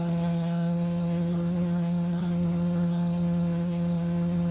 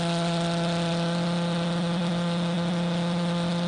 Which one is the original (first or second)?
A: second